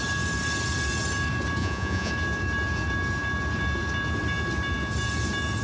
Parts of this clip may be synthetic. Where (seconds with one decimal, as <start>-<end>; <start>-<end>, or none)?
1.6-2.1